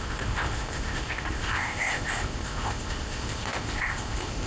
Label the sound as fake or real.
fake